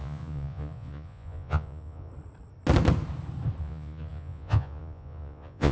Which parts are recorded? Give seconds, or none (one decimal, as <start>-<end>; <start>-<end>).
2.1-3.6